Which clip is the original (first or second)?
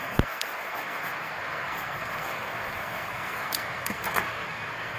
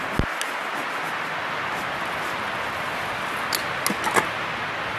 second